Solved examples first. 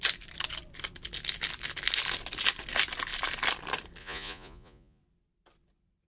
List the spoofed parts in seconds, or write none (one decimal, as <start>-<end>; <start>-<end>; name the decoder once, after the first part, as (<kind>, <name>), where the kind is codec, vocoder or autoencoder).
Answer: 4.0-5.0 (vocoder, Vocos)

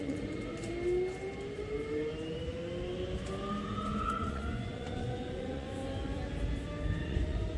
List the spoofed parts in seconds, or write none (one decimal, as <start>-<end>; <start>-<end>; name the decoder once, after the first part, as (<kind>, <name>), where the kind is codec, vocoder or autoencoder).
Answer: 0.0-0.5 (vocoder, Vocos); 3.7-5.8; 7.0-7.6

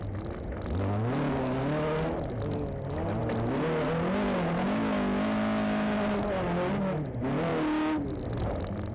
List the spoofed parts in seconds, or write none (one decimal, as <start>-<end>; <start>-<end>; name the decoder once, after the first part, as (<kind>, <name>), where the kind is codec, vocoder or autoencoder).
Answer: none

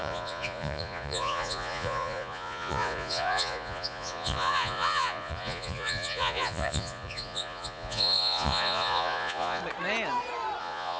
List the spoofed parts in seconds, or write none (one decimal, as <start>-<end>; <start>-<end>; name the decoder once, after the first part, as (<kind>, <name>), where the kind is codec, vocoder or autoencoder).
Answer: 0.0-9.6 (vocoder, Vocos); 10.6-11.0

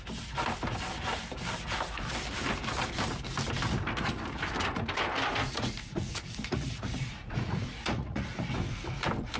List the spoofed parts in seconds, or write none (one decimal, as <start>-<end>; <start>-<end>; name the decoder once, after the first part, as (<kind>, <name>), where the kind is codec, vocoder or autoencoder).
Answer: 5.4-8.5 (vocoder, Vocos)

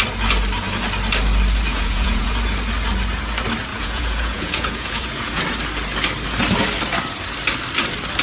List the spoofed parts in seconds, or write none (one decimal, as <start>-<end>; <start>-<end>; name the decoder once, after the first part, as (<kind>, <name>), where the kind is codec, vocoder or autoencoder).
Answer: 1.7-2.3 (vocoder, Vocos); 3.7-5.4

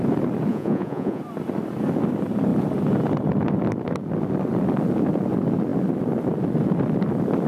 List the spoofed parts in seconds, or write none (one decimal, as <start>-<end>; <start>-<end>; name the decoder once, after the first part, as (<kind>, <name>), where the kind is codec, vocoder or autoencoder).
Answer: 0.5-1.2 (vocoder, Vocos)